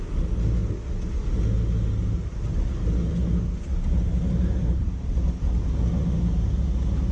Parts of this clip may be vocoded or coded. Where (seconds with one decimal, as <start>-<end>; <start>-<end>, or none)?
4.1-5.3